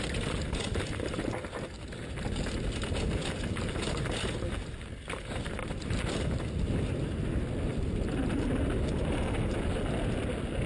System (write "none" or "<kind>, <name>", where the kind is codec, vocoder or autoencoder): none